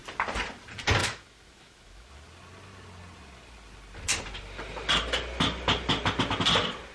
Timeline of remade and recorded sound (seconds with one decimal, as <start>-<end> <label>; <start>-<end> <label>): 0.0-1.0 recorded; 1.0-2.1 remade; 2.1-6.9 recorded